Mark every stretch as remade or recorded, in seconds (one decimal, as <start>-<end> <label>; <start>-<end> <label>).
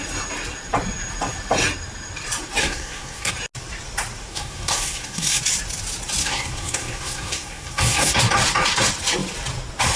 0.0-2.6 recorded; 2.6-3.3 remade; 3.3-4.3 recorded; 4.3-5.4 remade; 5.4-6.2 recorded; 6.2-8.2 remade; 8.2-10.0 recorded